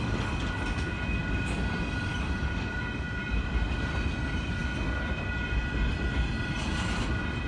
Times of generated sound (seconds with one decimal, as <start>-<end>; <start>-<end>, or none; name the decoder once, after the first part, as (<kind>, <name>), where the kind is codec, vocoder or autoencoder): none